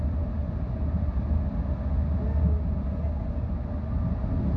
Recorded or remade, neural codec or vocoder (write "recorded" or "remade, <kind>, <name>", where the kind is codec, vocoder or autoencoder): recorded